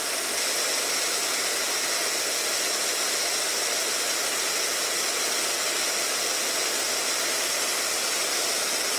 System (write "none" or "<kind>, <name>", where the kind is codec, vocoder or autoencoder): none